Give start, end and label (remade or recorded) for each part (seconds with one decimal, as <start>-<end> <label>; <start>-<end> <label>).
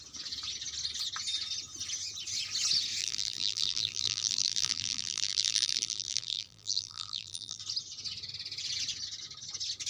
0.0-3.0 recorded; 3.0-7.6 remade; 7.6-9.9 recorded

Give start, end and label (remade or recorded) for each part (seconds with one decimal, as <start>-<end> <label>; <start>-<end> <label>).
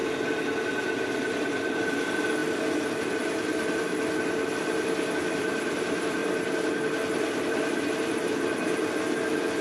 0.0-1.0 recorded; 1.0-2.4 remade; 2.4-3.1 recorded; 3.1-3.9 remade; 3.9-4.4 recorded; 4.4-9.6 remade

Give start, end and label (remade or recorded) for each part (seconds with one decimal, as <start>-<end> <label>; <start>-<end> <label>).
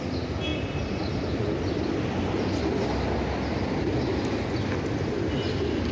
0.0-5.9 recorded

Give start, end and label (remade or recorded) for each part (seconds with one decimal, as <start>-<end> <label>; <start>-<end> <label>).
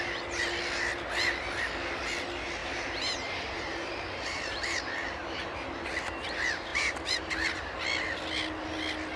0.0-2.6 recorded; 2.6-4.8 remade; 4.8-5.2 recorded; 5.2-5.9 remade; 5.9-6.7 recorded; 6.7-7.6 remade; 7.6-9.2 recorded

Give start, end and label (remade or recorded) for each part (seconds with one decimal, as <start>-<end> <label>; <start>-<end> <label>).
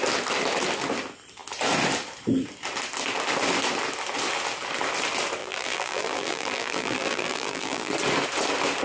0.0-5.4 recorded; 5.4-7.9 remade; 7.9-8.8 recorded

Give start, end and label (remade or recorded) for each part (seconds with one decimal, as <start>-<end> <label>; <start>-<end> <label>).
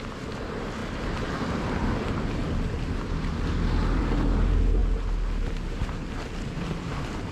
0.0-7.3 recorded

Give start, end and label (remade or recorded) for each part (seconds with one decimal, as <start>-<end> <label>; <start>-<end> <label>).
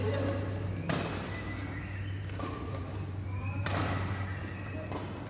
0.0-3.4 recorded; 3.4-5.3 remade